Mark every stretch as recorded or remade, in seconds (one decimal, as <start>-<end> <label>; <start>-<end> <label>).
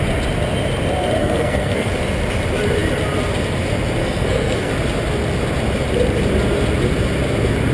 0.0-1.2 recorded; 1.2-1.9 remade; 1.9-4.0 recorded; 4.0-4.7 remade; 4.7-7.7 recorded